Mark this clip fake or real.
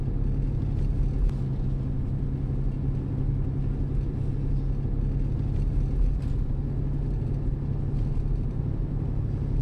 real